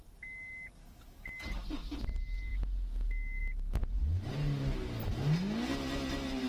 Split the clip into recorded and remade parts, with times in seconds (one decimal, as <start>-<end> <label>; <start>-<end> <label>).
0.0-0.8 recorded; 0.8-1.3 remade; 1.3-6.5 recorded